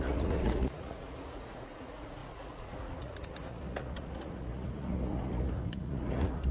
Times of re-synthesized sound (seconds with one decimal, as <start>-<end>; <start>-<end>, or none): 0.0-6.5

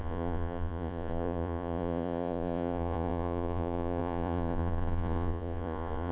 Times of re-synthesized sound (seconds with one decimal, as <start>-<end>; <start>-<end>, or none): 0.0-6.1

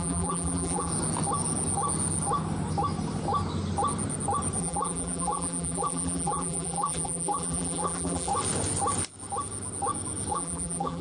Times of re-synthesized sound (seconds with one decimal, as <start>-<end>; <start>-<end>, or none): 0.0-0.9; 4.6-8.3; 10.3-11.0

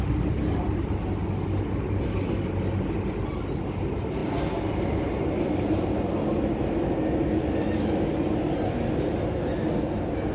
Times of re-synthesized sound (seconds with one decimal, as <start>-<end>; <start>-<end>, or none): none

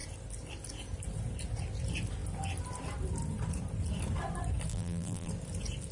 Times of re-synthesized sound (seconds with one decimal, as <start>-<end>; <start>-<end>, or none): 4.7-5.3

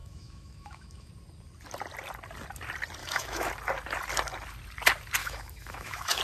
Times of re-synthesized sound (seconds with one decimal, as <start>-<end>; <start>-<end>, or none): 0.0-1.1; 3.0-3.5; 5.2-6.2